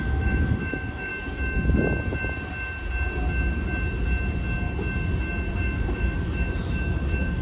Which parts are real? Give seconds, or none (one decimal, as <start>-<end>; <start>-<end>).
1.1-5.5